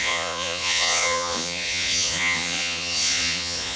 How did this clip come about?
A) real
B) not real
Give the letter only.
B